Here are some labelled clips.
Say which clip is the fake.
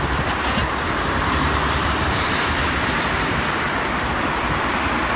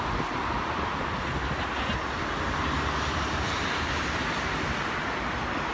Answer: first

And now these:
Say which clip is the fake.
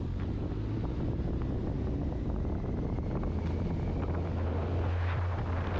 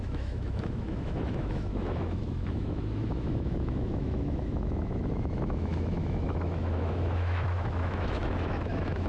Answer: second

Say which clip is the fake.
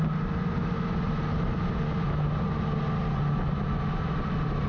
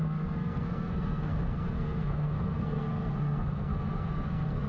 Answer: second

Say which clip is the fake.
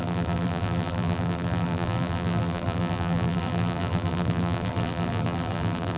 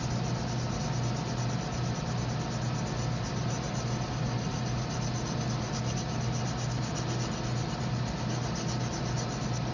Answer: first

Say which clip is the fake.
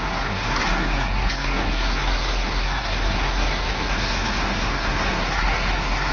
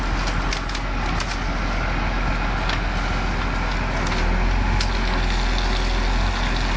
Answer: first